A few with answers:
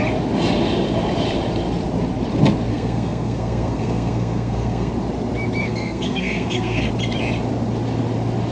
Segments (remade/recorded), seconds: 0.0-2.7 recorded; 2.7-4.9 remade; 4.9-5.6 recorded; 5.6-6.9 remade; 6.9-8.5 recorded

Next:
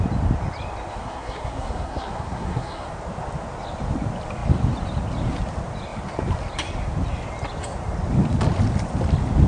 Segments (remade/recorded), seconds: 0.0-0.9 recorded; 0.9-2.9 remade; 2.9-9.5 recorded

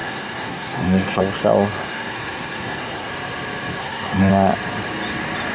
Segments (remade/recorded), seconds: 0.0-1.2 remade; 1.2-1.8 recorded; 1.8-3.1 remade; 3.1-3.8 recorded; 3.8-4.3 remade; 4.3-5.5 recorded

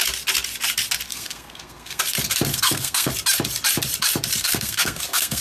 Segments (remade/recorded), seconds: 0.0-1.1 recorded; 1.1-2.0 remade; 2.0-2.5 recorded; 2.5-3.1 remade; 3.1-4.4 recorded; 4.4-5.4 remade